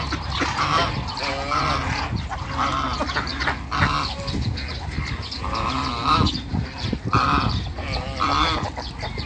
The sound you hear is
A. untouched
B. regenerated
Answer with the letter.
A